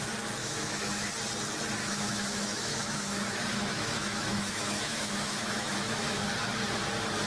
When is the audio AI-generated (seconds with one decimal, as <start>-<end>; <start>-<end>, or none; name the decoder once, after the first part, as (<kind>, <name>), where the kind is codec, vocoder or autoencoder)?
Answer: 0.4-1.1 (autoencoder, DAC-VAE); 1.8-6.2